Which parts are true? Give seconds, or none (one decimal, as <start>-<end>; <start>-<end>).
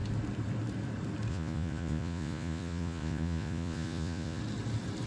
0.0-1.3; 4.4-5.1